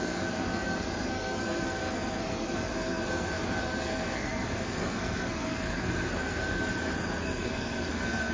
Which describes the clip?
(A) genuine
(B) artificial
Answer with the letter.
B